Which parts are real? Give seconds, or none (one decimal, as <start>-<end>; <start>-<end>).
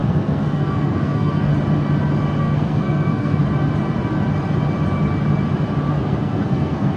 1.5-2.4; 3.4-5.9